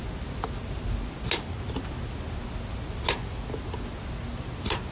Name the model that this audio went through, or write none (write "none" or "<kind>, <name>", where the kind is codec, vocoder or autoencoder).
none